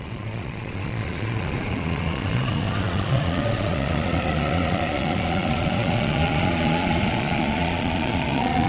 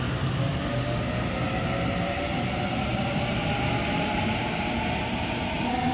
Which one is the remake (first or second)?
first